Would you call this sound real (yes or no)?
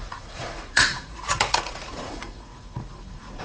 no